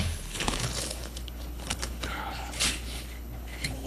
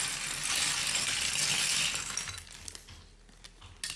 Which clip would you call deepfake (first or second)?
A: first